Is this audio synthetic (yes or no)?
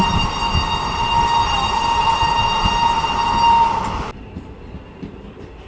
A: no